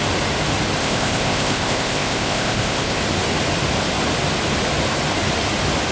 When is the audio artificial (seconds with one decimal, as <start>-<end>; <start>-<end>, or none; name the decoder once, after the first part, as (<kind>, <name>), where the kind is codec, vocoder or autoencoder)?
0.8-3.0 (codec, ZipCodec)